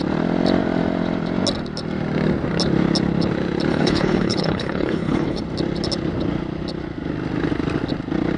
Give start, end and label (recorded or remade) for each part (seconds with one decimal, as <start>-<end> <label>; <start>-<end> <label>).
0.0-3.7 recorded; 3.7-5.4 remade; 5.4-8.4 recorded